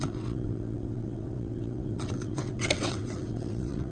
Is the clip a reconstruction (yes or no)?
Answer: yes